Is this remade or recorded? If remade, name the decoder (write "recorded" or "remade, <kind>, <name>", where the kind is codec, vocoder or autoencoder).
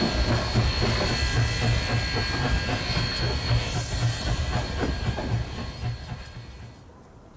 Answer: recorded